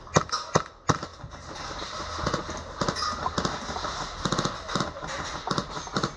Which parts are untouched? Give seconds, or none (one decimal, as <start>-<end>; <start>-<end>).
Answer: 0.0-6.2